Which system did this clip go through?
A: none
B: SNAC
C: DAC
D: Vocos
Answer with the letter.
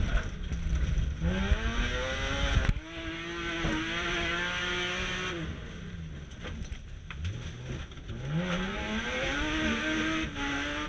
A